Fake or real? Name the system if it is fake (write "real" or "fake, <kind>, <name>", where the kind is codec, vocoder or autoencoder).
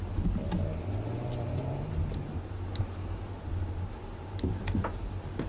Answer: real